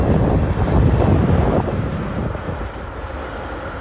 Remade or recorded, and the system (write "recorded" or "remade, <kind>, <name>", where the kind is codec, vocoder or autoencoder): recorded